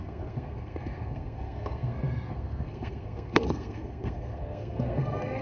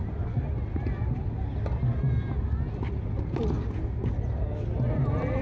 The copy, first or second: first